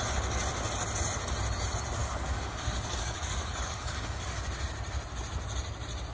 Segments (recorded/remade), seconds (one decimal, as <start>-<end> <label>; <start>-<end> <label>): 0.0-2.0 recorded; 2.0-4.4 remade; 4.4-6.1 recorded